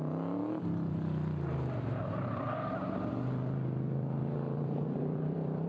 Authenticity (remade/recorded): remade